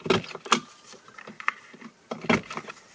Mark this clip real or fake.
real